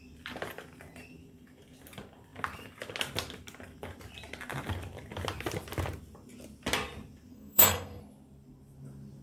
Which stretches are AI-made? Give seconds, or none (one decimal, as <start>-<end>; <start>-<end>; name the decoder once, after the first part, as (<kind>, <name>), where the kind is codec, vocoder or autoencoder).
7.3-8.0 (codec, SNAC)